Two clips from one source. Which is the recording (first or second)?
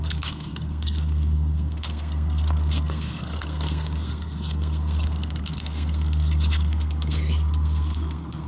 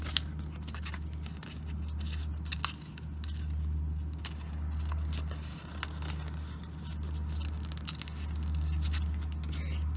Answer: second